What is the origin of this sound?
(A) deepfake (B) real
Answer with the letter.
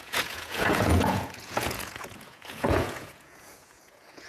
A